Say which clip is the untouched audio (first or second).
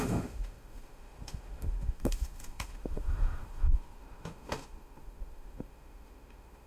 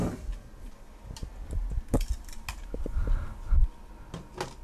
second